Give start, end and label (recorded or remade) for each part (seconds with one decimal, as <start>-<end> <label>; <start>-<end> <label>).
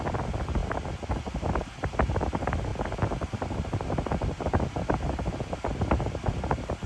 0.0-6.9 recorded